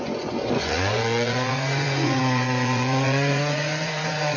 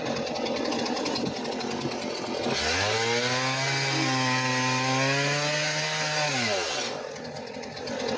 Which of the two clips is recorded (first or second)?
second